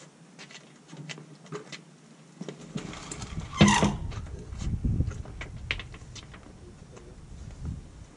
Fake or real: real